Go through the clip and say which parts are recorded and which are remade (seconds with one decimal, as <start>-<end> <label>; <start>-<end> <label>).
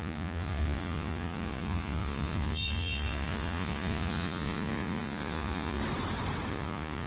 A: 0.0-5.8 remade; 5.8-6.5 recorded; 6.5-7.1 remade